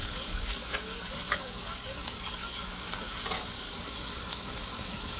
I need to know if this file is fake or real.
fake